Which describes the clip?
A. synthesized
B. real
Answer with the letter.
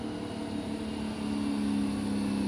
B